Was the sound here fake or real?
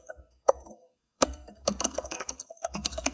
fake